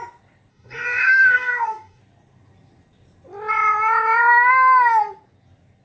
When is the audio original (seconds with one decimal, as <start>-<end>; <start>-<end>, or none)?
0.0-0.5; 2.0-5.8